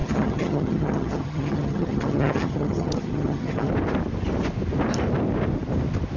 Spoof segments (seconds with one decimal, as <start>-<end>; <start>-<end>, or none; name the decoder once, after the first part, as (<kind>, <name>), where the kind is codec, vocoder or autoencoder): 0.0-3.7 (vocoder, HiFi-GAN)